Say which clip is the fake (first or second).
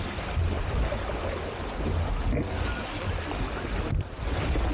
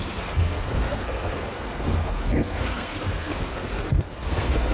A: second